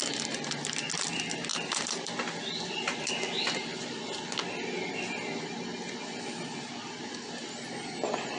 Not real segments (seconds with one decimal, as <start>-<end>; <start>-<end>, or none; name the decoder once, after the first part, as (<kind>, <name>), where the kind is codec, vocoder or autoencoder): 1.5-3.2 (vocoder, BigVGAN v2)

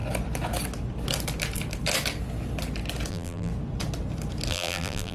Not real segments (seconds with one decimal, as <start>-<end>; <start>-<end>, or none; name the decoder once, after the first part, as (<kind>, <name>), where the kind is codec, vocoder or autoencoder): 3.1-3.5 (vocoder, BigVGAN v2); 4.5-5.1

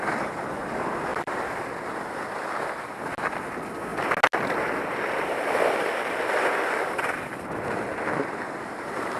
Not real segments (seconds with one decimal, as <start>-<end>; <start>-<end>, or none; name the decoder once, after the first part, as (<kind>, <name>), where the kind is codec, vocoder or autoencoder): 1.1-2.1 (vocoder, BigVGAN v2)

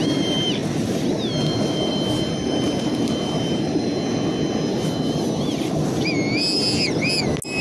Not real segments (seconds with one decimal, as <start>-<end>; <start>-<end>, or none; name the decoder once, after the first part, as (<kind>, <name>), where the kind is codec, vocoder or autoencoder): 0.0-0.6 (vocoder, BigVGAN v2); 1.9-3.9

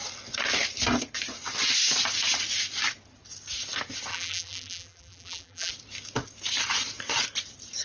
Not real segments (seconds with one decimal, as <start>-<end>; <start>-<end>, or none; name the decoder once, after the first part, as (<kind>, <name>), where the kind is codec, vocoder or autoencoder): 4.1-5.7 (vocoder, BigVGAN v2)

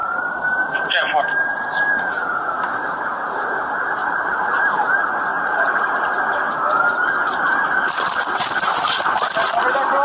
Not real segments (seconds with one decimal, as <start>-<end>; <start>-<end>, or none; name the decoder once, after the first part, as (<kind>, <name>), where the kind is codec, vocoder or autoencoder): 5.3-5.9 (vocoder, BigVGAN v2)

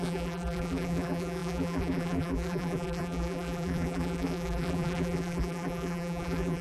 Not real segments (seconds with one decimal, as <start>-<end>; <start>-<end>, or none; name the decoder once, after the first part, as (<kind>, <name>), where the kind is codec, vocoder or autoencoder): 0.0-6.6 (vocoder, BigVGAN v2)